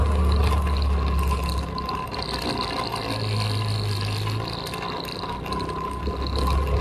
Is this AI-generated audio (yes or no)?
no